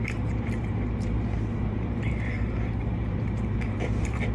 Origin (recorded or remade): remade